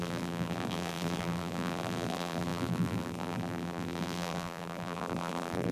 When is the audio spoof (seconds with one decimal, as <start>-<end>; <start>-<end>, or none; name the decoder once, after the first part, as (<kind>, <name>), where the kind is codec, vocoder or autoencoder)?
0.0-5.7 (vocoder, BigVGAN v2)